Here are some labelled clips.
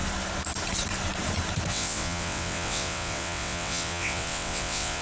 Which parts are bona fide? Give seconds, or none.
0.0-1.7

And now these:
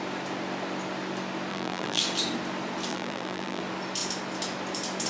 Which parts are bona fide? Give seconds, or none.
0.0-1.5; 2.0-2.9; 3.6-5.1

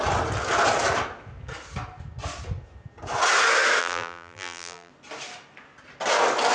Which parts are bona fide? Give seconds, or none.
0.0-3.8; 4.9-6.5

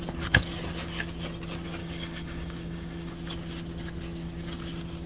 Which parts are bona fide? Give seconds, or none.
0.0-1.8; 3.1-5.1

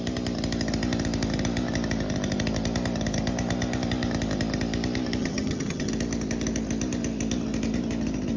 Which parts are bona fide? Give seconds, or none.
0.0-5.2; 5.9-8.4

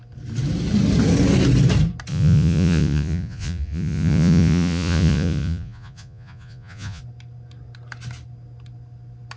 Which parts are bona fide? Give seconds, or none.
0.0-2.1; 7.0-9.4

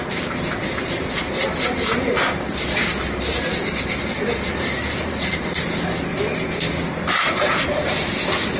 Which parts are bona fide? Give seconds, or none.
6.1-7.1

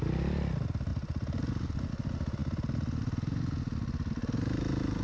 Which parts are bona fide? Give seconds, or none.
0.0-5.0